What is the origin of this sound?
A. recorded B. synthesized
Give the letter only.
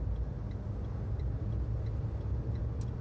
A